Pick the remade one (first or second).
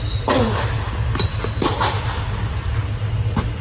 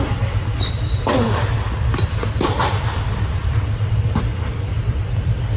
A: second